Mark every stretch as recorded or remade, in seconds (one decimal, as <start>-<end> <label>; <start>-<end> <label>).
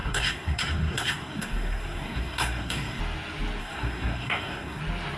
0.0-3.0 remade; 3.0-3.6 recorded; 3.6-4.8 remade; 4.8-5.2 recorded